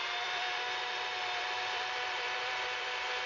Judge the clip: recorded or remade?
remade